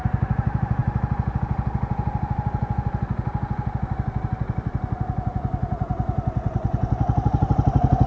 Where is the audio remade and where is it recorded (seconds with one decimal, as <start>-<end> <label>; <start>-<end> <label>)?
0.0-8.1 recorded